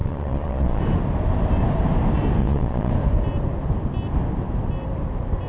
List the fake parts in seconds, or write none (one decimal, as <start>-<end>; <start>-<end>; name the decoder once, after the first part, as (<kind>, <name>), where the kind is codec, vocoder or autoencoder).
0.0-0.8 (vocoder, Vocos); 2.4-2.9